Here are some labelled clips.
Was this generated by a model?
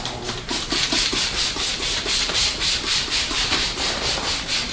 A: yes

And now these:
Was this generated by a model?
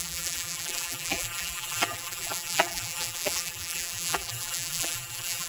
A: yes